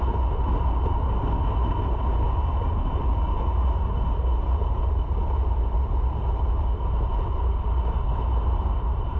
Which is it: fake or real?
real